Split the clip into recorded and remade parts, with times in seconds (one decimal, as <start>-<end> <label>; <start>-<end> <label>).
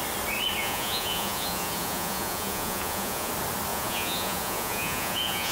0.0-0.6 recorded; 0.6-3.3 remade; 3.3-3.7 recorded; 3.7-5.5 remade